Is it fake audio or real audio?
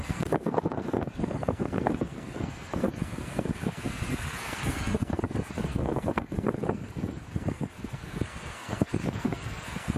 fake